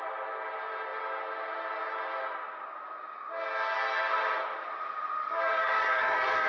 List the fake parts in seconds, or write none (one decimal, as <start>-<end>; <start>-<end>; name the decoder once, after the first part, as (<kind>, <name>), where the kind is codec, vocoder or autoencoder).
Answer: 5.2-6.5 (codec, DAC)